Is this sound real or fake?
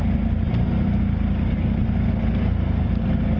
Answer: real